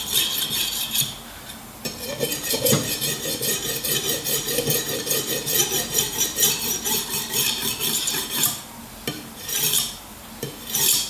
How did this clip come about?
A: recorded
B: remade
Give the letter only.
B